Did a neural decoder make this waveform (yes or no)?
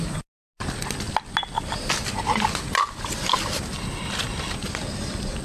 no